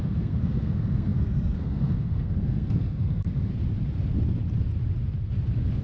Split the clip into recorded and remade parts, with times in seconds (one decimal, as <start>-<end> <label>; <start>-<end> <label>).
0.0-3.5 remade; 3.5-5.8 recorded